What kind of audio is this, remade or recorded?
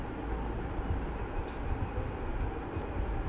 recorded